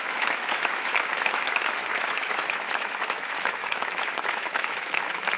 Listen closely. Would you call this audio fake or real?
fake